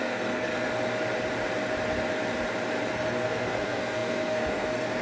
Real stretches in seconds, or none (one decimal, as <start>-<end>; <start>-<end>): 0.7-2.9